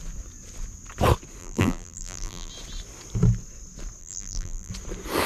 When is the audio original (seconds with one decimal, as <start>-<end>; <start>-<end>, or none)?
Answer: 0.0-1.4; 2.5-4.0; 4.7-5.3